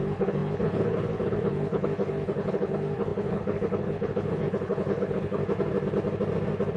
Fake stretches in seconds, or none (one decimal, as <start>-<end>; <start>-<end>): 0.0-5.4